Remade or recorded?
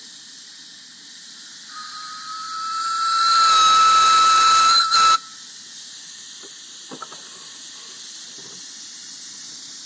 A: recorded